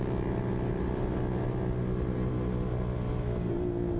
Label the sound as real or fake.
real